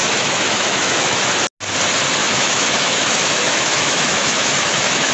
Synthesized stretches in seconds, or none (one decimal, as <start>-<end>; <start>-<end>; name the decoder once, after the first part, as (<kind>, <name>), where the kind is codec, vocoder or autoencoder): 0.0-1.3 (autoencoder, DAC-VAE); 2.2-5.1